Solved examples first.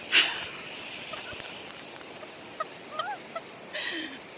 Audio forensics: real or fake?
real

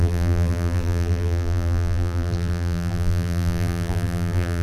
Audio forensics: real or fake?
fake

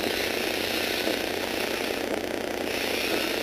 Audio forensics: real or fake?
real